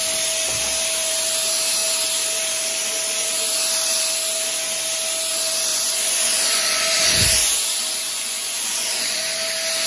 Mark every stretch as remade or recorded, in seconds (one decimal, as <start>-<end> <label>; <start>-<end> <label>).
0.0-5.7 recorded; 5.7-9.2 remade; 9.2-9.9 recorded